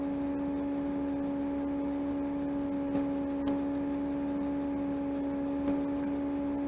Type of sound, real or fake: real